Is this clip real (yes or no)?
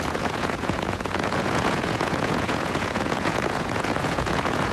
no